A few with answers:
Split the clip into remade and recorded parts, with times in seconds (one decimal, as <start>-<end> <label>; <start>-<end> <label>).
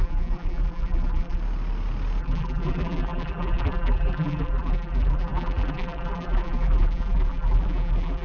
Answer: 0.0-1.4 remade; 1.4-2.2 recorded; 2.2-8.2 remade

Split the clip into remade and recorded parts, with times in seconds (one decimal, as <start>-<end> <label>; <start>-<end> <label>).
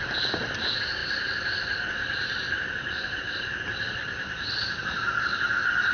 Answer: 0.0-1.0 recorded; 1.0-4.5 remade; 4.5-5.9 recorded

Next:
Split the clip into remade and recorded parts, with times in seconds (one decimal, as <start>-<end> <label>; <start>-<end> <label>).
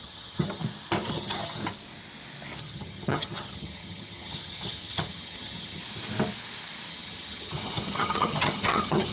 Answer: 0.0-0.6 remade; 0.6-1.1 recorded; 1.1-1.6 remade; 1.6-2.6 recorded; 2.6-5.8 remade; 5.8-6.9 recorded; 6.9-9.1 remade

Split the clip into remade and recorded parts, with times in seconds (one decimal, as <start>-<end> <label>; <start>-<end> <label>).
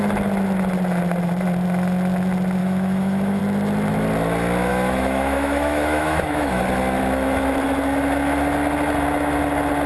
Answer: 0.0-2.6 recorded; 2.6-3.4 remade; 3.4-4.7 recorded; 4.7-6.6 remade; 6.6-9.9 recorded